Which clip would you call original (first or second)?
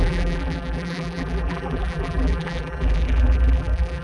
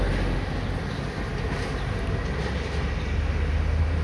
second